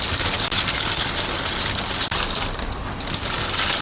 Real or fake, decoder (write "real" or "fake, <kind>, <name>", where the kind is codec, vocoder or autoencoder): real